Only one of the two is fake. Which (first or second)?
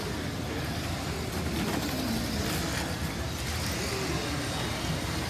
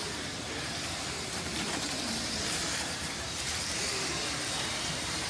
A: second